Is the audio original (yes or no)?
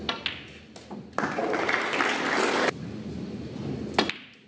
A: yes